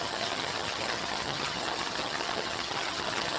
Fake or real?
fake